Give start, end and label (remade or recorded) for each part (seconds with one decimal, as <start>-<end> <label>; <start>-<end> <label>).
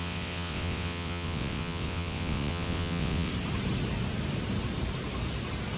0.0-3.3 remade; 3.3-5.8 recorded